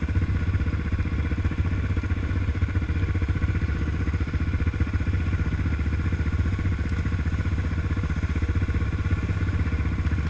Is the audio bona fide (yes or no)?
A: yes